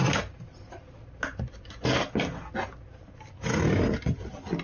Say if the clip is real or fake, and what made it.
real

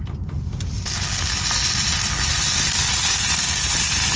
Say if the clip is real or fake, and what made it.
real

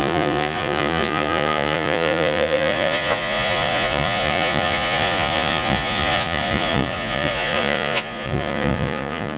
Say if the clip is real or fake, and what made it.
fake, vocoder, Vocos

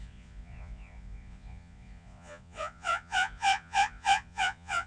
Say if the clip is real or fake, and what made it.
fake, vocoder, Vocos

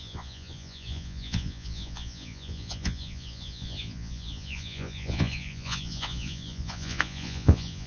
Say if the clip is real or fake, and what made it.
fake, vocoder, Vocos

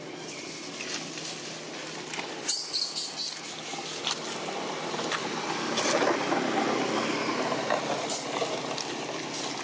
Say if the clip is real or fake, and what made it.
real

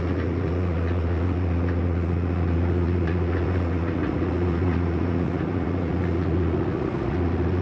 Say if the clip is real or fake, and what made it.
fake, vocoder, Vocos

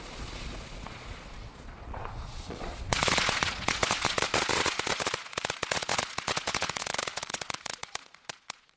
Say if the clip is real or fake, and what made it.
fake, vocoder, Vocos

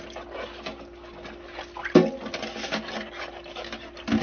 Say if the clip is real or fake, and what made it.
real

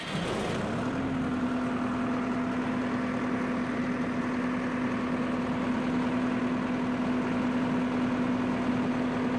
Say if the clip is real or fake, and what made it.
real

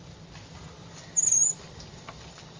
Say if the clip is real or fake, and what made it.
real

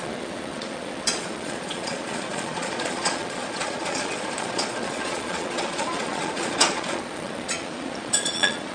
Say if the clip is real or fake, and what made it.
fake, vocoder, Vocos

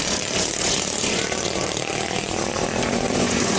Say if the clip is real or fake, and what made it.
fake, vocoder, Vocos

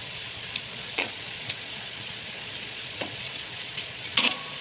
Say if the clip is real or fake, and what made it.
fake, vocoder, Vocos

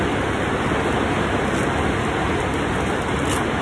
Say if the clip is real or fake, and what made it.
real